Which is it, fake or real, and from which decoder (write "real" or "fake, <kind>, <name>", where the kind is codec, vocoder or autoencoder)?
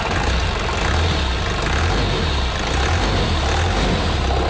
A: real